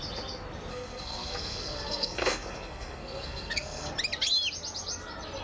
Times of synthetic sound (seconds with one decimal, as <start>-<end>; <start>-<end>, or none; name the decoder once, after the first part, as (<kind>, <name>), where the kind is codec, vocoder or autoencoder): 0.7-3.9 (codec, SNAC)